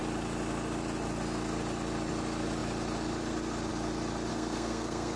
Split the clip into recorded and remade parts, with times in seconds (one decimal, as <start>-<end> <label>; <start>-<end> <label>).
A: 0.0-4.3 recorded; 4.3-5.2 remade